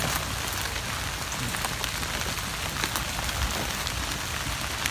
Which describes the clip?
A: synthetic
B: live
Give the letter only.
B